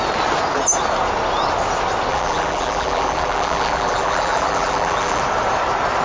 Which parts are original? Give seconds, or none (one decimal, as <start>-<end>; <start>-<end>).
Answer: 0.0-2.1; 5.2-6.0